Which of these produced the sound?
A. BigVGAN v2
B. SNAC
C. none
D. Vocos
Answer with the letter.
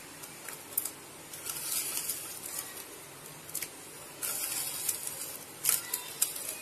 C